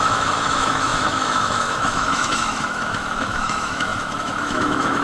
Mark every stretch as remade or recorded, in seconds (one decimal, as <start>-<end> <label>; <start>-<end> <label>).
0.0-5.0 remade